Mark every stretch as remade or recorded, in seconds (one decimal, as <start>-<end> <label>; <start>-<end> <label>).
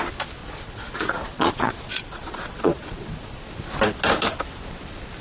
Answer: 0.0-0.4 recorded; 0.4-3.5 remade; 3.5-5.2 recorded